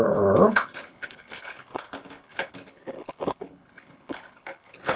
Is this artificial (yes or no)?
yes